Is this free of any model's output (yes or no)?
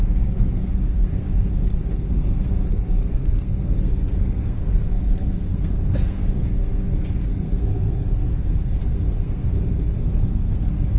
no